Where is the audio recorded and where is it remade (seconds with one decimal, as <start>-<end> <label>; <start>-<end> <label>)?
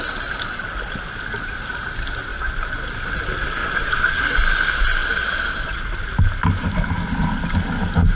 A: 0.0-3.6 recorded; 3.6-4.2 remade; 4.2-5.0 recorded; 5.0-5.8 remade; 5.8-8.2 recorded